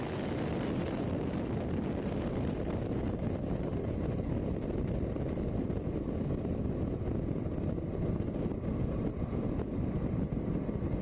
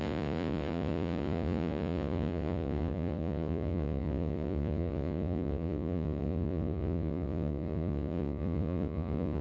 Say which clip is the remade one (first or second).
second